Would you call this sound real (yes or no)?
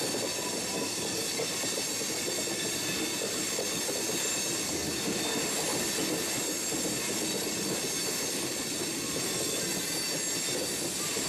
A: yes